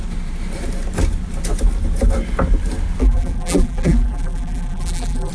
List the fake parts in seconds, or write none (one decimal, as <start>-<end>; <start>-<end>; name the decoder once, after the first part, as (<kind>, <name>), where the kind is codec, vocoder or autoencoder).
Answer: 3.0-5.3 (vocoder, BigVGAN v2)